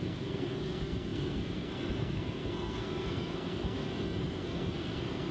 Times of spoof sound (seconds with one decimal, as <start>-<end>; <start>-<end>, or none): 0.0-5.3